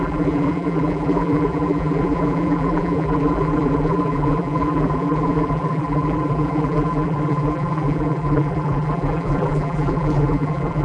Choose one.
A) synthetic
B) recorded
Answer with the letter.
A